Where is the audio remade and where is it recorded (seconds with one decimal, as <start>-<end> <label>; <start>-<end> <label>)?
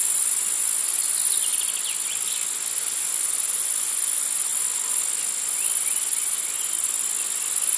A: 0.0-7.8 recorded